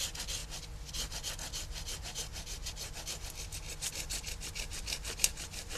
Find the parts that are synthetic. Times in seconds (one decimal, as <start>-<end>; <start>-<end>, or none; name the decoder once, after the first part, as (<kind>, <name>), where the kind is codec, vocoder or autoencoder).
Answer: none

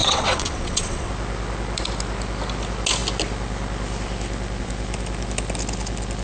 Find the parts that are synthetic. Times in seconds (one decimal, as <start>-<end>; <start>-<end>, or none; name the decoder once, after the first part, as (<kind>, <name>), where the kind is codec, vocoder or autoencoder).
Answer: 0.0-1.1 (vocoder, WaveNeXt)